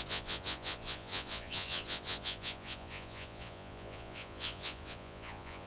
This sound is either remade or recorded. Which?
remade